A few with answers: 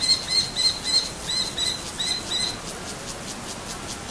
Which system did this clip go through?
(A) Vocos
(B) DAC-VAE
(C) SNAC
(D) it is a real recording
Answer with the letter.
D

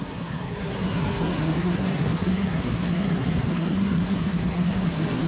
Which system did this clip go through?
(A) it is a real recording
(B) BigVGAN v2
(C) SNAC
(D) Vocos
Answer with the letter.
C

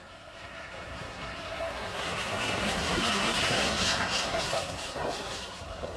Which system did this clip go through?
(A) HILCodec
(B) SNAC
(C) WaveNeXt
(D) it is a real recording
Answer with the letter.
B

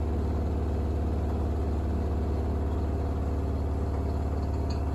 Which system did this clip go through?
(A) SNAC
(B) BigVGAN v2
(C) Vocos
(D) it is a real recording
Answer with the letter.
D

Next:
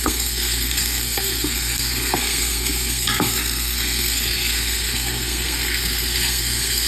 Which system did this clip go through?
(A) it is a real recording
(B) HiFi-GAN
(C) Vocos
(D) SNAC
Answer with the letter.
D